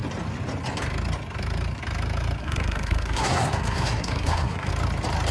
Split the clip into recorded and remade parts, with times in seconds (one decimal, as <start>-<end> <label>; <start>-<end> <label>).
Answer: 0.0-2.4 recorded; 2.4-4.7 remade; 4.7-5.3 recorded